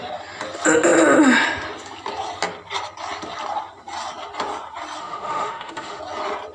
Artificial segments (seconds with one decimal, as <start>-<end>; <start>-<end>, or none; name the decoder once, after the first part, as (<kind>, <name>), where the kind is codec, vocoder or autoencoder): 5.0-6.0 (autoencoder, DAC-VAE)